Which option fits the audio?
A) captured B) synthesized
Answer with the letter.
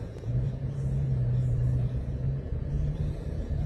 B